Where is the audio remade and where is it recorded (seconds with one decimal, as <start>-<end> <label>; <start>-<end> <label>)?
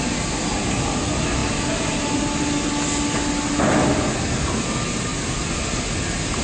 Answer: 0.0-6.4 recorded